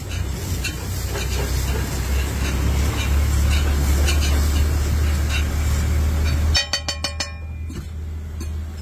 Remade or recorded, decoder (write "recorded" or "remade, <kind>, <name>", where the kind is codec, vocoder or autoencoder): recorded